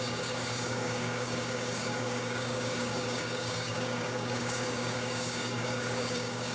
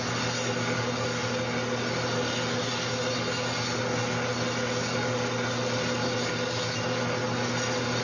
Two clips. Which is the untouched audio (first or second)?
second